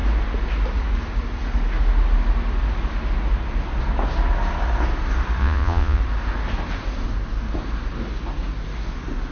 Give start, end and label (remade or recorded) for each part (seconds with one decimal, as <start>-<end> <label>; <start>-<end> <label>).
0.0-5.4 recorded; 5.4-6.0 remade; 6.0-9.3 recorded